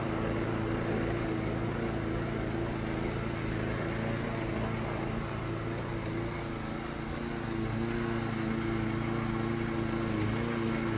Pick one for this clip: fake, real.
real